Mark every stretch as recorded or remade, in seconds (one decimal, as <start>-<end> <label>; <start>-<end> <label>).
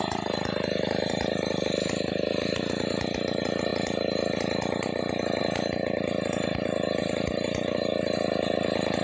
0.0-9.0 recorded